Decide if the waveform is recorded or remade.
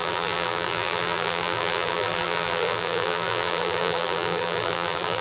remade